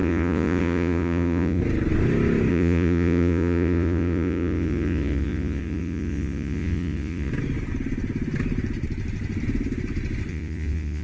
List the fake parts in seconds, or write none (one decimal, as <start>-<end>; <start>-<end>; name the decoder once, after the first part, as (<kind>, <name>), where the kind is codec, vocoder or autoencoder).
0.0-1.6 (vocoder, Vocos); 2.5-7.3; 10.3-11.0